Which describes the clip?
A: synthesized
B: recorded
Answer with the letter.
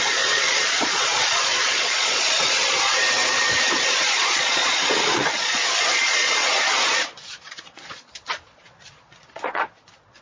A